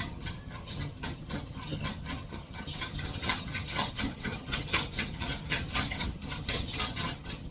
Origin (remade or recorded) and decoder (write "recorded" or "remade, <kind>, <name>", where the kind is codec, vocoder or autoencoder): remade, vocoder, HiFi-GAN